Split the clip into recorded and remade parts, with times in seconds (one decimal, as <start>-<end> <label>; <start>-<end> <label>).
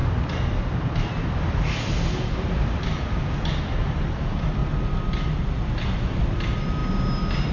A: 0.0-4.6 remade; 4.6-6.2 recorded; 6.2-7.5 remade